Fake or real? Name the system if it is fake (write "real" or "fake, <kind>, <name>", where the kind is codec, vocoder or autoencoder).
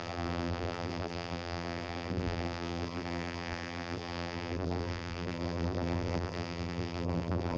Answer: fake, vocoder, BigVGAN v2